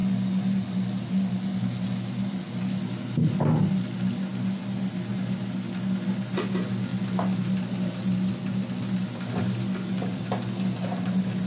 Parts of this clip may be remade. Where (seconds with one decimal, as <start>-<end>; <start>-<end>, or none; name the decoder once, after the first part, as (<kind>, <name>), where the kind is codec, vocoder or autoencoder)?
none